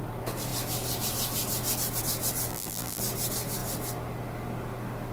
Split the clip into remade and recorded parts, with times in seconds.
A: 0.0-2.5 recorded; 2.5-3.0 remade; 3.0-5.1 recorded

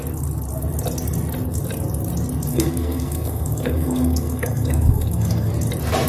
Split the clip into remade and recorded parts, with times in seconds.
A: 0.0-2.5 recorded; 2.5-5.5 remade; 5.5-6.1 recorded

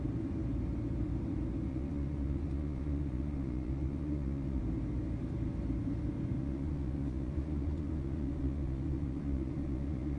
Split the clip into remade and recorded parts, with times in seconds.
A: 0.0-1.7 recorded; 1.7-4.6 remade; 4.6-6.4 recorded; 6.4-10.2 remade